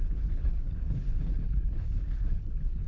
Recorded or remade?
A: remade